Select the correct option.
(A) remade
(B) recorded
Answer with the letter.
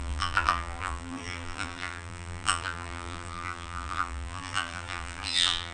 A